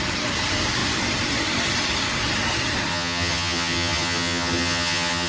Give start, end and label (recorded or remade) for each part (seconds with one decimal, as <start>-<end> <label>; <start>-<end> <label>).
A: 0.0-2.9 recorded; 2.9-5.3 remade